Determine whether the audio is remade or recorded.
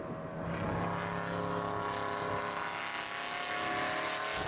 recorded